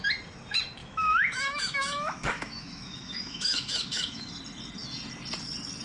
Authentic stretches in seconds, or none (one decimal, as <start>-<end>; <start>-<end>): 0.0-0.8; 4.3-5.8